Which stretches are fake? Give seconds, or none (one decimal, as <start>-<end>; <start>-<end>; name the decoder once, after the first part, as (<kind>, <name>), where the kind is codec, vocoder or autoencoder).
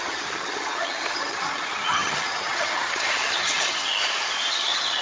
0.0-4.0 (vocoder, HiFi-GAN); 4.5-5.0